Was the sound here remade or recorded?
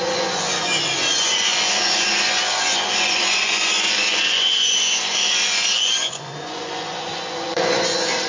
remade